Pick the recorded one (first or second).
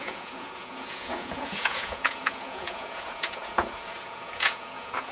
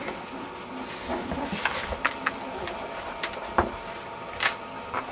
second